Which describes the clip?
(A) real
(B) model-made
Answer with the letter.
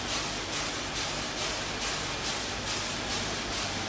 A